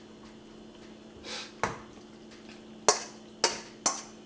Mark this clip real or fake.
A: real